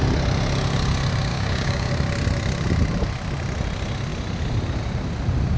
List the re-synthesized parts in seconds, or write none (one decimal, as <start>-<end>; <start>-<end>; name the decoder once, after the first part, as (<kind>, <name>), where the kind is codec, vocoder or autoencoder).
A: 1.3-1.9 (codec, DAC)